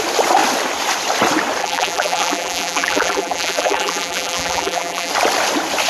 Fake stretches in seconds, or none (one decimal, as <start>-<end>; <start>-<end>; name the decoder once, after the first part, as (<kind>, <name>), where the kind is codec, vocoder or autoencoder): 1.6-5.1 (vocoder, BigVGAN v2)